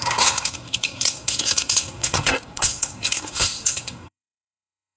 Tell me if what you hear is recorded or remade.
remade